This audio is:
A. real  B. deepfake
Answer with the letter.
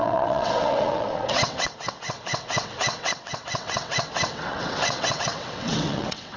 B